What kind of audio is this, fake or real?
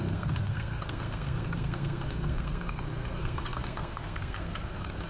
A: fake